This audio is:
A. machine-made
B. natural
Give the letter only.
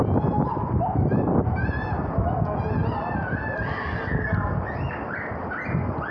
B